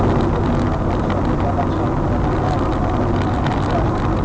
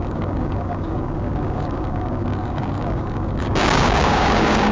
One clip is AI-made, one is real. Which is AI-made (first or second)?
second